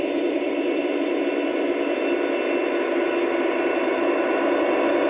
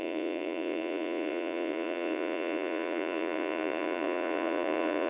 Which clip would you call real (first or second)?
first